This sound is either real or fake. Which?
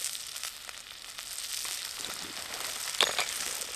real